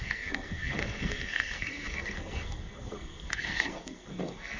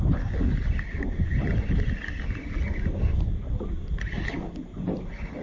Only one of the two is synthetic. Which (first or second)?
first